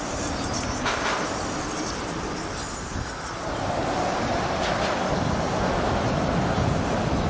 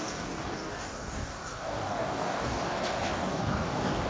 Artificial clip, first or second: second